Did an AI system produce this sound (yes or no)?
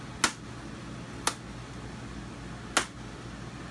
no